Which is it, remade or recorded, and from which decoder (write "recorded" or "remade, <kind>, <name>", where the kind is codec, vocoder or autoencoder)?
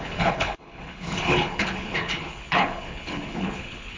remade, codec, HILCodec